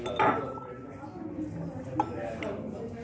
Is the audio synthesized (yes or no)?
no